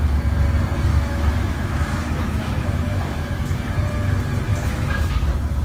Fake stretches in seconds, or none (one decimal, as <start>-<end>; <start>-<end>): 0.9-3.7; 4.5-5.1